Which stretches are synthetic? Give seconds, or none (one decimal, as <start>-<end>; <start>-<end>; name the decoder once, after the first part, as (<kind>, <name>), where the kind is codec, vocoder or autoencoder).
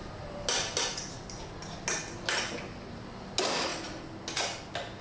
none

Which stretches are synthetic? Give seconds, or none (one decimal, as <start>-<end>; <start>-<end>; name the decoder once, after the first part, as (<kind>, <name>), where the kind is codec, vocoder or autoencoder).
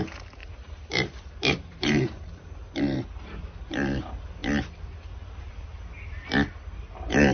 0.4-2.7 (vocoder, BigVGAN v2)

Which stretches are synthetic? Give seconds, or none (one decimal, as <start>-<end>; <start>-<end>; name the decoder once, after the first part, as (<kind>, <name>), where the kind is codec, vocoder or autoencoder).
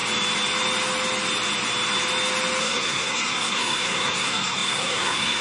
2.6-5.4 (codec, SNAC)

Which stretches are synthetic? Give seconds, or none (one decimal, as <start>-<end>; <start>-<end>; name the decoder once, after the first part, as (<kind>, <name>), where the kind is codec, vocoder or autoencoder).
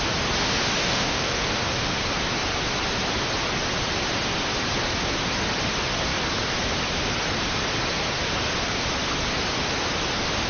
0.8-1.9 (autoencoder, DAC-VAE)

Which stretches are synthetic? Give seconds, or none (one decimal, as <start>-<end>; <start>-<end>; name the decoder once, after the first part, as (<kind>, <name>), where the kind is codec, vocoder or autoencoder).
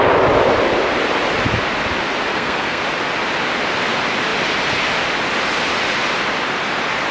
2.3-2.8 (codec, SNAC)